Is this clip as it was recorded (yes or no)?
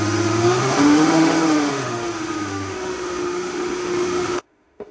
no